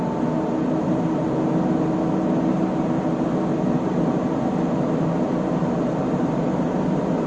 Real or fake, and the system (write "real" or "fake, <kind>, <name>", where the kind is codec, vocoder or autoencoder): real